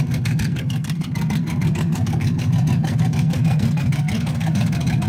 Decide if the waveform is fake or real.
fake